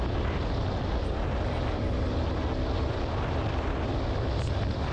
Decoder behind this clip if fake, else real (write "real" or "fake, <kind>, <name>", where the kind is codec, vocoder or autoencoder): real